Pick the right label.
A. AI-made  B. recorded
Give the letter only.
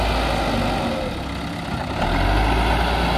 B